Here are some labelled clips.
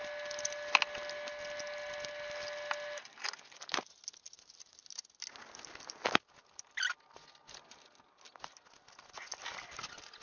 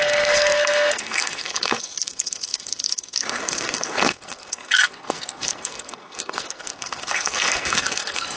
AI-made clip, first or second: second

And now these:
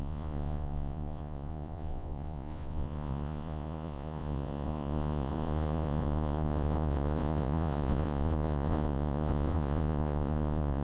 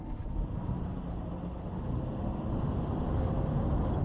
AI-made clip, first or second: first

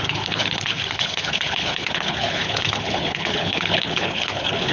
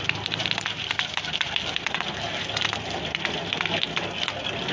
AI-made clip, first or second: first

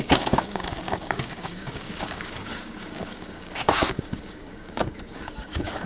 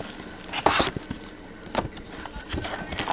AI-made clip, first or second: first